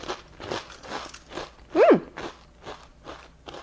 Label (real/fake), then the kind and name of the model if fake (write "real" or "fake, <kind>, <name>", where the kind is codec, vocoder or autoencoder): real